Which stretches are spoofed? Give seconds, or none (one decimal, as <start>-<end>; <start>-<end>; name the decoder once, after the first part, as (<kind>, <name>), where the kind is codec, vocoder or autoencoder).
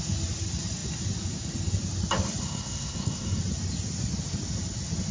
2.4-3.4 (codec, SNAC)